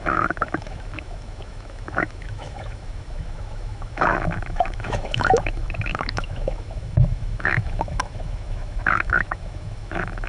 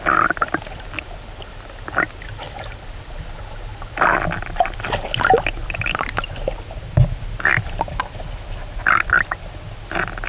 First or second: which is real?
second